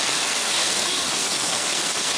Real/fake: fake